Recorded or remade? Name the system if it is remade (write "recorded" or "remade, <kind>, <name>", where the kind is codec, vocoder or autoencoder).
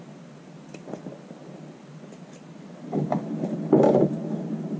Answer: recorded